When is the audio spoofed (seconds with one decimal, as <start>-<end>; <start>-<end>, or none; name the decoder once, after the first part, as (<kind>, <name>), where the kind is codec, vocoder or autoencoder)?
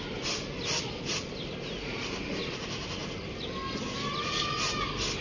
none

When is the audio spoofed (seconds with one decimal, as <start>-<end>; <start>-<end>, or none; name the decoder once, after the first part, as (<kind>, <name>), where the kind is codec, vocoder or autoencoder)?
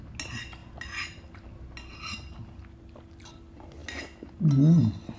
none